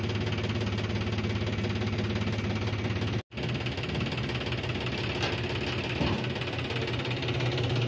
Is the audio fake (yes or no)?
no